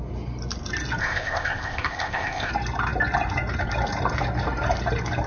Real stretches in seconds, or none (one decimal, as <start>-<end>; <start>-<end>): 0.0-1.0; 2.5-5.3